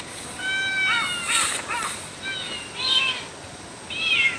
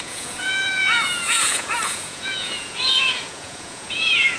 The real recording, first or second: first